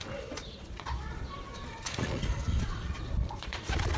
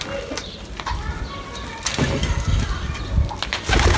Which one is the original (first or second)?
second